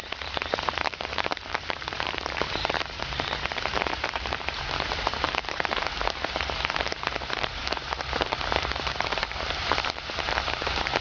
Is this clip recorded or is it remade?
remade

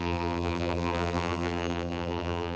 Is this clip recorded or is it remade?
remade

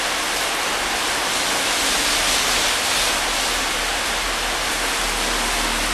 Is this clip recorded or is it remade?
recorded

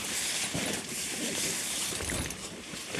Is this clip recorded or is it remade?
remade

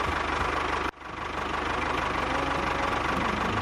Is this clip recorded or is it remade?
recorded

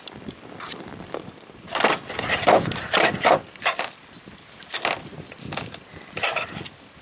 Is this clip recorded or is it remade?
remade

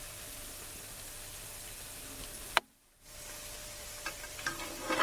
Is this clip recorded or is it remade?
remade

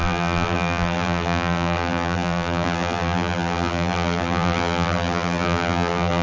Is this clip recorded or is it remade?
remade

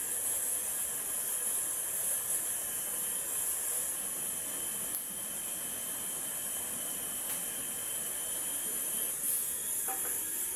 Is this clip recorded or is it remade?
recorded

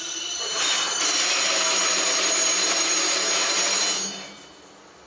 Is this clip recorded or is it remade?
recorded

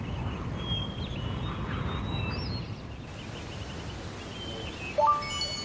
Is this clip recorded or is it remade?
recorded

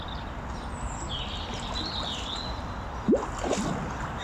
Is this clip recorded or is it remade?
recorded